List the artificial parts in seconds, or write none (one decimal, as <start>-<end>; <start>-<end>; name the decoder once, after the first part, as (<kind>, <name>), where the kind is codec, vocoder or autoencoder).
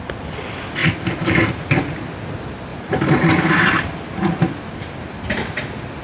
0.8-1.5 (vocoder, BigVGAN v2); 2.7-3.9